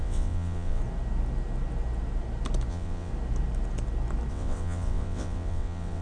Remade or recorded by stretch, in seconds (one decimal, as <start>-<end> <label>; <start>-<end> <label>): 0.0-0.8 remade; 0.8-2.7 recorded; 2.7-3.1 remade; 3.1-4.3 recorded; 4.3-6.0 remade